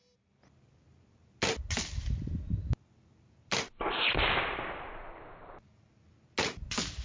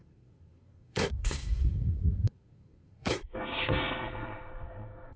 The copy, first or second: second